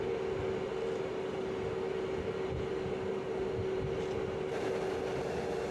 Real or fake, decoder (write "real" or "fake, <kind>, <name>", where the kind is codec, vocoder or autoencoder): real